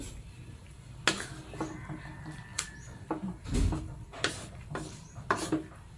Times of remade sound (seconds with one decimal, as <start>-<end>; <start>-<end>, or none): none